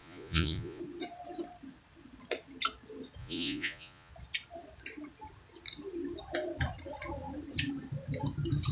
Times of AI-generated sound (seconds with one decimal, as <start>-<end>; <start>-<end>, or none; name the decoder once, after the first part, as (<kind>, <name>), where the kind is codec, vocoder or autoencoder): 0.0-0.8 (vocoder, Vocos); 3.2-4.1